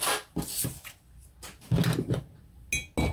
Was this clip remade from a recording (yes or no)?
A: no